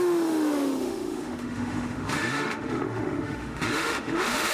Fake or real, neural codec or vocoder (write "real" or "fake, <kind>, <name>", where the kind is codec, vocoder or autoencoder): fake, autoencoder, DAC-VAE